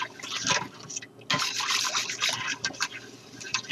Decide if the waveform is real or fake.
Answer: real